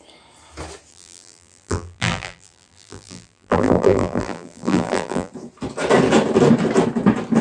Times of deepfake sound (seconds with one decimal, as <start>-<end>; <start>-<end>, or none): 0.9-5.3